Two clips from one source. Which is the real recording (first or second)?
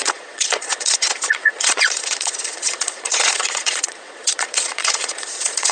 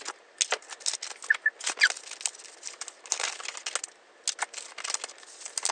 second